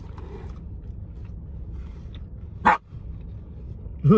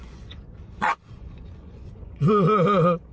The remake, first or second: second